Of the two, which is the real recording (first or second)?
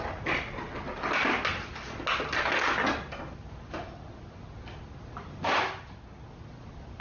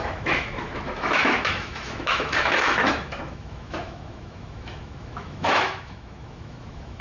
first